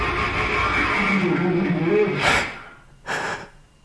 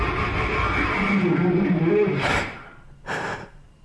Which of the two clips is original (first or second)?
first